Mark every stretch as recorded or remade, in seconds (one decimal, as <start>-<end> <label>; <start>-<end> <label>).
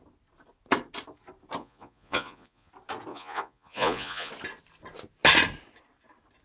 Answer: 0.0-1.6 recorded; 1.6-2.7 remade; 2.7-3.1 recorded; 3.1-4.3 remade; 4.3-6.4 recorded